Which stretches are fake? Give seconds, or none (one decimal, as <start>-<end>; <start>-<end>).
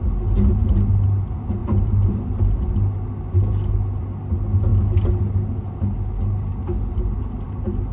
1.6-2.4